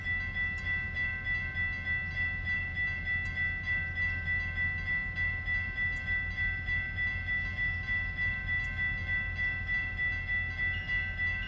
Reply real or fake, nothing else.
real